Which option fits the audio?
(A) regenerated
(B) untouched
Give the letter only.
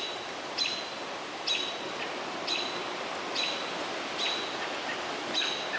B